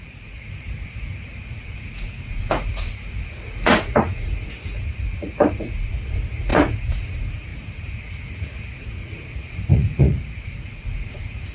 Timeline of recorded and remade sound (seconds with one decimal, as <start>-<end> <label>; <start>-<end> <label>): 0.0-11.5 remade